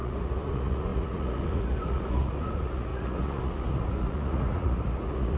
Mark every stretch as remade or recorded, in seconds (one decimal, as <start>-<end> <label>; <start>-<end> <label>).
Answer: 0.0-5.4 remade